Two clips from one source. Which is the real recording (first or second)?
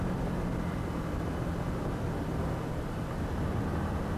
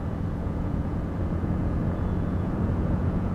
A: first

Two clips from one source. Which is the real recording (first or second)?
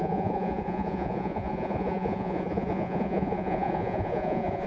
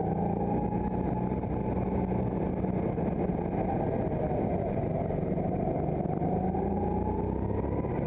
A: second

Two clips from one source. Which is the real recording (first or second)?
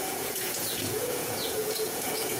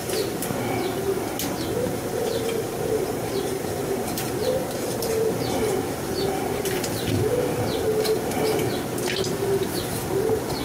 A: second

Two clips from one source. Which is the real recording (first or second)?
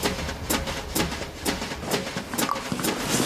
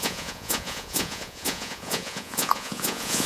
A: first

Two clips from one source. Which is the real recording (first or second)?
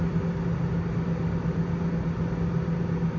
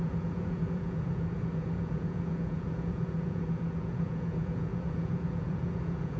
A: first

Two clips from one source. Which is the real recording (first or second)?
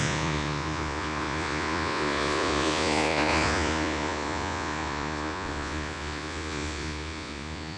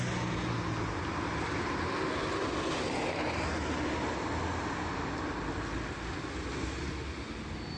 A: second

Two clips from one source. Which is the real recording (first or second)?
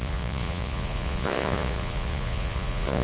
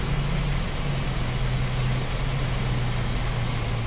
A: second